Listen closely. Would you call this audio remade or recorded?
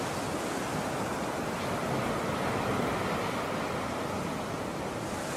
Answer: recorded